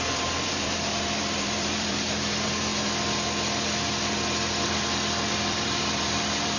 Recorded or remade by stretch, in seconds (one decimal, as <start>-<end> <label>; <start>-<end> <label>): 0.0-2.7 remade; 2.7-5.5 recorded; 5.5-6.6 remade